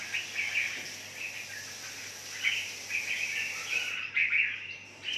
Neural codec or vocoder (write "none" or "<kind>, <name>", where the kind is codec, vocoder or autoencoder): none